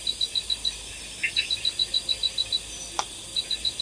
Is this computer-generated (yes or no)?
no